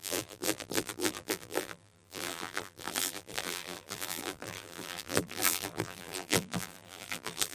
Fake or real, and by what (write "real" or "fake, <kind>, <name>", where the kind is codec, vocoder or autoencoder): fake, vocoder, BigVGAN v2